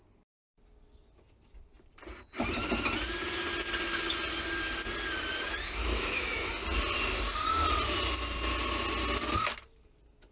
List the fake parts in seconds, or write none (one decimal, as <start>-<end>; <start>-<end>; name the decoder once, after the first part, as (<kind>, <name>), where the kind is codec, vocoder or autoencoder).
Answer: 5.8-6.5 (autoencoder, DAC-VAE)